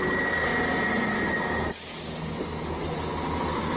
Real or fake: real